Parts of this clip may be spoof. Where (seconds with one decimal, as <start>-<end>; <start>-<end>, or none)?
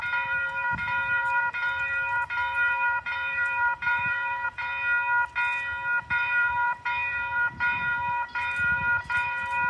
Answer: 0.0-4.7; 6.1-9.7